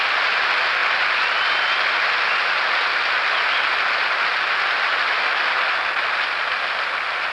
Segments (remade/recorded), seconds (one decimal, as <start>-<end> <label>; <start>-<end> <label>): 0.0-7.3 recorded